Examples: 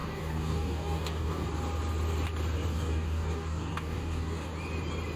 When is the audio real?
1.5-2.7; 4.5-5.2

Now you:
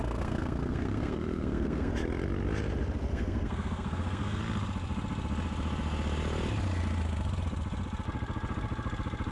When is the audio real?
1.9-3.1; 4.4-9.3